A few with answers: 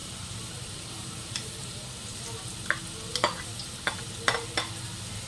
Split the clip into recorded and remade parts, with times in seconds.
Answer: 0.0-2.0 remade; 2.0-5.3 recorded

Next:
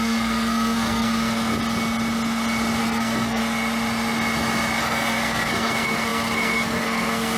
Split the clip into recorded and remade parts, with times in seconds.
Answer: 0.0-1.5 remade; 1.5-2.8 recorded; 2.8-3.4 remade; 3.4-4.8 recorded; 4.8-7.4 remade

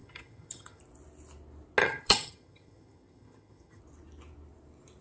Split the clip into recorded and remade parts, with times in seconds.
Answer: 0.0-0.8 remade; 0.8-1.8 recorded; 1.8-3.8 remade; 3.8-5.0 recorded

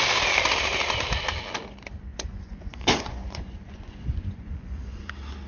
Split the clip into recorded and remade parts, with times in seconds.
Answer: 0.0-2.1 recorded; 2.1-5.1 remade; 5.1-5.5 recorded

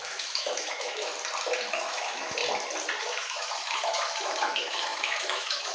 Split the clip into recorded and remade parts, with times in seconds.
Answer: 0.0-1.1 remade; 1.1-1.7 recorded; 1.7-2.4 remade; 2.4-3.0 recorded; 3.0-5.7 remade